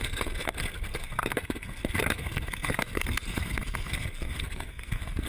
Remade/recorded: remade